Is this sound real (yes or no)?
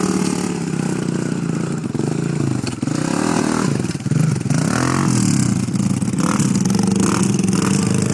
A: yes